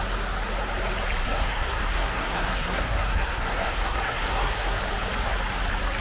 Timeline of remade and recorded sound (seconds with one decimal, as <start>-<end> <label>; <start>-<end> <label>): 0.0-1.2 recorded; 1.2-4.8 remade; 4.8-6.0 recorded

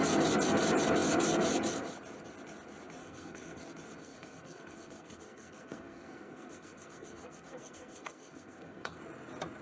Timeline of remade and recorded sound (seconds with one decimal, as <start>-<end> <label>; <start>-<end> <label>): 0.0-3.0 recorded; 3.0-3.6 remade; 3.6-4.0 recorded; 4.0-9.0 remade; 9.0-9.6 recorded

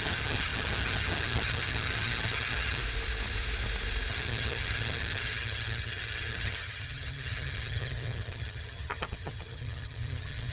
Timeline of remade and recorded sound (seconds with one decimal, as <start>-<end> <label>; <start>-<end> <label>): 0.0-2.8 remade; 2.8-4.1 recorded; 4.1-10.5 remade